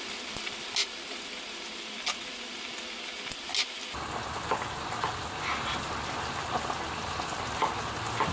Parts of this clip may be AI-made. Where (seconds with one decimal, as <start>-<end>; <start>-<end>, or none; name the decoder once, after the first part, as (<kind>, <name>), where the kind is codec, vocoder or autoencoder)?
none